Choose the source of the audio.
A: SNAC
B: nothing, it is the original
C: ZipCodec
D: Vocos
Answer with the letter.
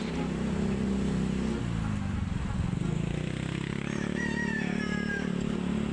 B